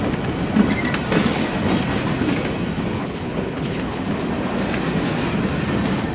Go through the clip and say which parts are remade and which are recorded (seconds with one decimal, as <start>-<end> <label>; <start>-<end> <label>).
0.0-2.9 recorded; 2.9-4.0 remade; 4.0-6.1 recorded